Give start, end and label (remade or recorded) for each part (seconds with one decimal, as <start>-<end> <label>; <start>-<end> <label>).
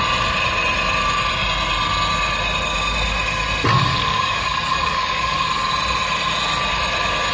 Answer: 0.0-3.9 recorded; 3.9-5.7 remade; 5.7-7.3 recorded